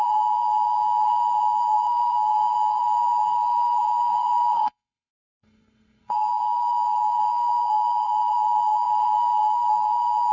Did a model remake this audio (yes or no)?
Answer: yes